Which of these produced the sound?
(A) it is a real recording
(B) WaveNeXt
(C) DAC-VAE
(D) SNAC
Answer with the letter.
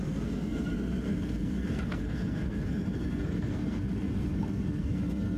D